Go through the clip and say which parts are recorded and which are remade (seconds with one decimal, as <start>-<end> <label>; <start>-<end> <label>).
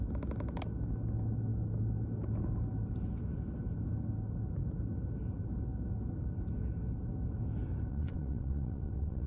0.0-7.9 recorded; 7.9-9.3 remade